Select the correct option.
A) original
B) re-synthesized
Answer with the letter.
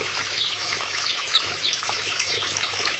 B